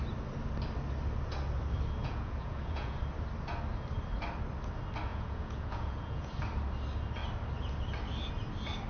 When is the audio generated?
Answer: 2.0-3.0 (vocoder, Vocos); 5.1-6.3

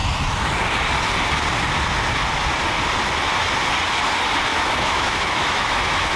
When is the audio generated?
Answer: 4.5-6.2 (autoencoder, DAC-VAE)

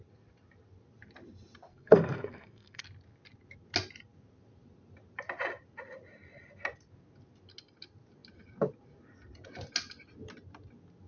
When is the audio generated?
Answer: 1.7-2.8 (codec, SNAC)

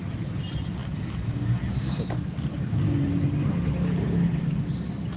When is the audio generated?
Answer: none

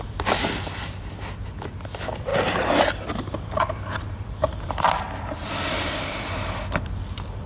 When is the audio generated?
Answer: 0.0-2.3 (vocoder, BigVGAN v2); 4.1-7.5

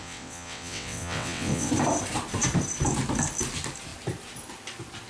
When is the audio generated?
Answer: 0.0-1.7 (vocoder, WaveNeXt)

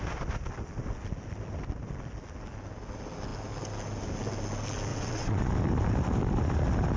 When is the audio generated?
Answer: 4.9-5.5 (vocoder, WaveNeXt)